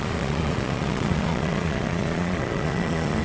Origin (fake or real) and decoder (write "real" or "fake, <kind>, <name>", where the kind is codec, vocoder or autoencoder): fake, vocoder, Vocos